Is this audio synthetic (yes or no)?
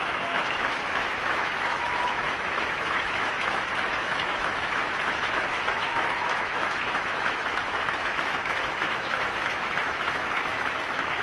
yes